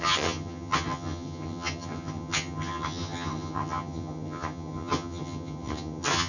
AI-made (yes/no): yes